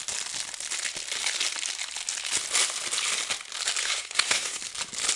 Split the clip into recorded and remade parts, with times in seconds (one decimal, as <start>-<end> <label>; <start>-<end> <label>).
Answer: 0.0-3.8 recorded; 3.8-4.6 remade; 4.6-5.2 recorded